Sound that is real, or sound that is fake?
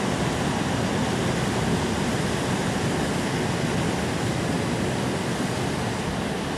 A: real